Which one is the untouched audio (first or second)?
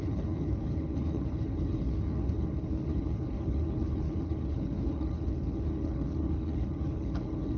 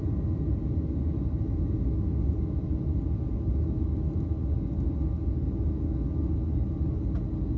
second